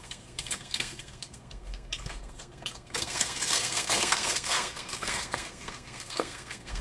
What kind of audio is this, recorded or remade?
remade